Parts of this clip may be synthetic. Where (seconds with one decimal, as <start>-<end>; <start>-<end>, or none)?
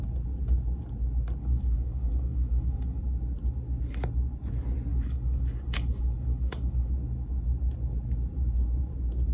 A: 1.4-3.0; 4.9-6.9